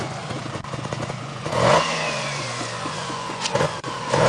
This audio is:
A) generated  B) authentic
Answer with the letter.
A